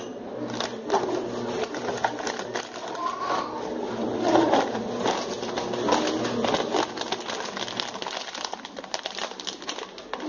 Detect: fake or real real